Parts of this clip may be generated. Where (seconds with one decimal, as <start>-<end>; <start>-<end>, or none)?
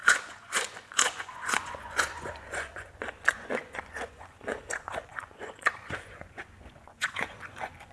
0.0-7.9